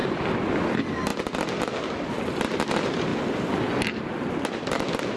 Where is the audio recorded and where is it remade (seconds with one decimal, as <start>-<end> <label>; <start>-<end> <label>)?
0.0-5.2 recorded